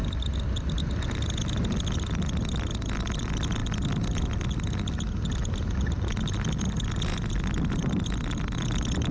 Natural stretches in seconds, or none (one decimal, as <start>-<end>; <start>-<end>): 0.0-9.1